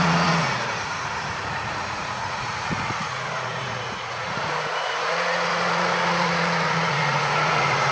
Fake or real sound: fake